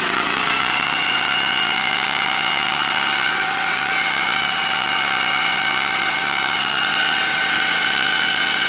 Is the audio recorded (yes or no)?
no